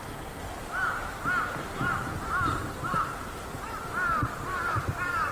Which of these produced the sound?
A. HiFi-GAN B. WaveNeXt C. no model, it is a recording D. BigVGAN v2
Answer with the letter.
C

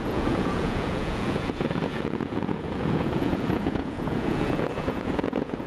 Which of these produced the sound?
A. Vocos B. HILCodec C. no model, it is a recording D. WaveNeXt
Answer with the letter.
A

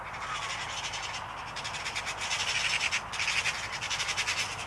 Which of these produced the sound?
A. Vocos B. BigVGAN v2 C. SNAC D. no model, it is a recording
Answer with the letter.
D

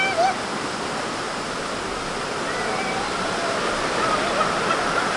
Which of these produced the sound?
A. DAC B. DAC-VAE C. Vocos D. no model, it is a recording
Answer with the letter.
D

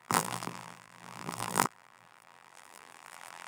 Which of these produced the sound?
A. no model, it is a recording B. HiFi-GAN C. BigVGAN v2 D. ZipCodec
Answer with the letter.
C